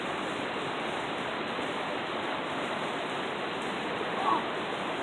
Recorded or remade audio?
recorded